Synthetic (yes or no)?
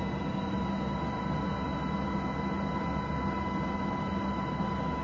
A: no